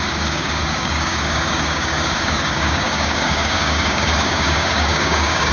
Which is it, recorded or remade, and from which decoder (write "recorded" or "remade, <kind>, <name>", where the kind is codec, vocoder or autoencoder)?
remade, codec, DAC